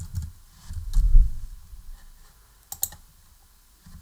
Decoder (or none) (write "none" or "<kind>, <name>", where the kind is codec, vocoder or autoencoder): none